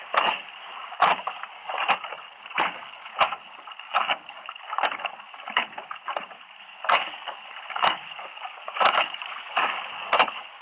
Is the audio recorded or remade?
remade